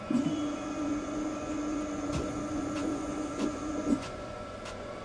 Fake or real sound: fake